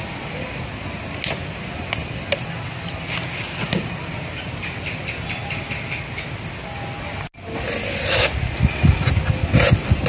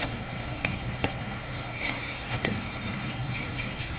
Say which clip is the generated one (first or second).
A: second